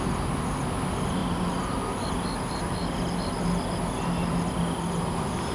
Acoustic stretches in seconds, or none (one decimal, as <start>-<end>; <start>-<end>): 0.0-5.5